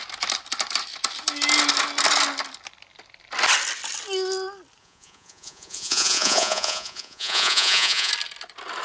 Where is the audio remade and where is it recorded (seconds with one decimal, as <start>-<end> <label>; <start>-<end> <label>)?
0.0-4.8 recorded; 4.8-8.1 remade; 8.1-8.8 recorded